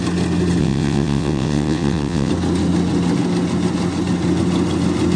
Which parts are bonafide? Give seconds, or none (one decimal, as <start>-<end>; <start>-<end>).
0.0-0.6; 2.3-5.2